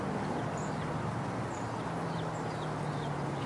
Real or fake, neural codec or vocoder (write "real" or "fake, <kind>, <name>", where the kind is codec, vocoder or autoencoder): real